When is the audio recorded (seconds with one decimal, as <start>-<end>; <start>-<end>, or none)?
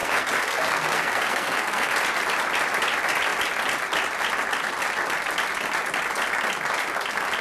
1.9-7.4